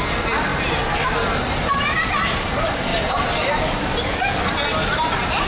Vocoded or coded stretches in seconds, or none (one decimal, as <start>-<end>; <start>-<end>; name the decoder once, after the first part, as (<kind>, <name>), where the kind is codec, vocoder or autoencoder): 0.0-0.5 (vocoder, BigVGAN v2); 1.7-2.9; 5.1-5.5